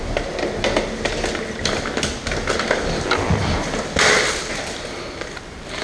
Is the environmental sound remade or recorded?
recorded